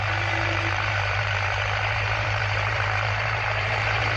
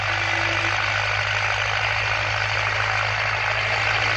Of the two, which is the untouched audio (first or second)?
second